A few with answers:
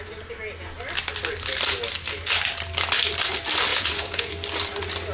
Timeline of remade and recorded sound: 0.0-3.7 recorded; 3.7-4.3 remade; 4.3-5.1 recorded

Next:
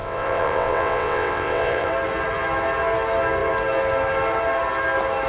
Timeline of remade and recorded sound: 0.0-1.9 remade; 1.9-5.3 recorded